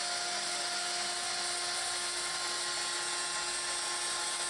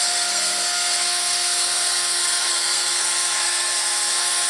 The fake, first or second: second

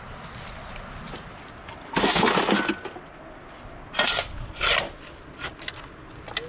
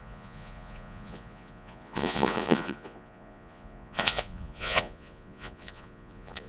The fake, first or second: second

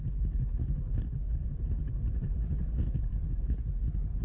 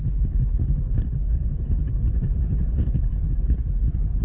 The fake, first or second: second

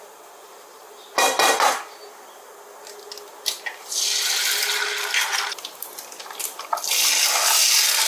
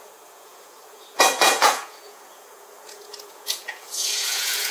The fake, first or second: second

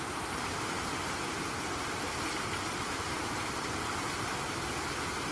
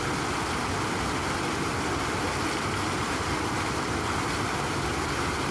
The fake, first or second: first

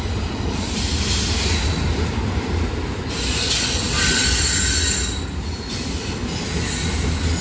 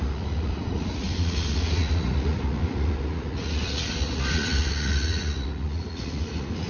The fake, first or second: second